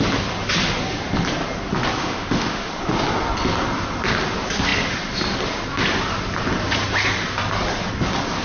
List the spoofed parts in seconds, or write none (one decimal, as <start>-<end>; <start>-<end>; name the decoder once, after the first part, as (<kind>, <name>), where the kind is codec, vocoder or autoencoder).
2.0-2.7 (autoencoder, DAC-VAE)